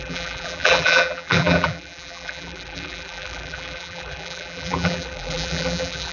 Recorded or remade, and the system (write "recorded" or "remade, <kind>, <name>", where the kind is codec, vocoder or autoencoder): remade, vocoder, BigVGAN v2